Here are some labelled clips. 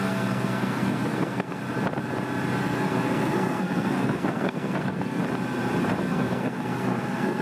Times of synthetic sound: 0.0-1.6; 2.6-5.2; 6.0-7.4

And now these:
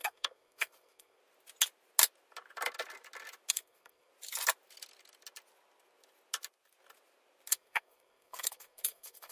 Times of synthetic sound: 0.0-1.2; 3.5-4.1; 7.5-9.3

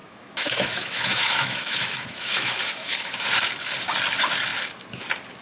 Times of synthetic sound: 0.0-3.2

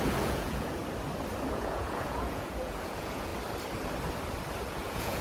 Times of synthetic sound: 0.0-0.8; 1.5-3.3; 4.6-5.2

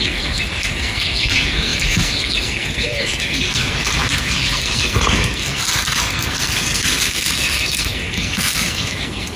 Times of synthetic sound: 0.0-9.4

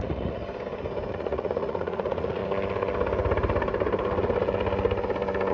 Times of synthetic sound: 0.0-0.4; 1.1-2.4

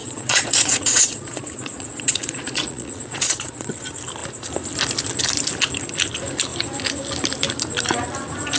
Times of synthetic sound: 0.0-3.7

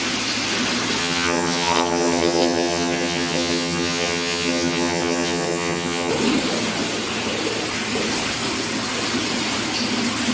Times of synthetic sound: 1.0-6.1